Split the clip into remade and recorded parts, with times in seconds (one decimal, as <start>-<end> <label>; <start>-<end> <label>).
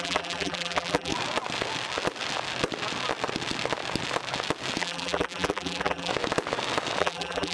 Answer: 0.0-1.1 remade; 1.1-4.8 recorded; 4.8-6.1 remade; 6.1-7.0 recorded; 7.0-7.5 remade